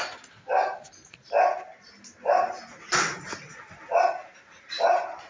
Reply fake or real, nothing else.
real